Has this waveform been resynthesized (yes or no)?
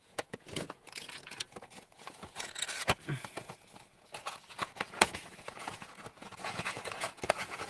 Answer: yes